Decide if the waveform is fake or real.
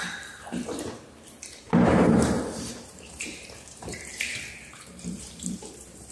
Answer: fake